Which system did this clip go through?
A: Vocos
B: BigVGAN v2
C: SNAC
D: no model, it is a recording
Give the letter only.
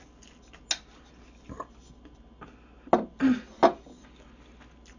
D